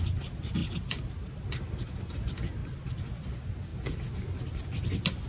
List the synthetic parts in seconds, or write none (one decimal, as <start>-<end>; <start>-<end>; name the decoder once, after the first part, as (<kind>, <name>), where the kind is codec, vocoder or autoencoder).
none